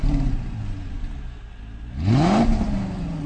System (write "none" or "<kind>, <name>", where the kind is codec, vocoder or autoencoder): vocoder, BigVGAN v2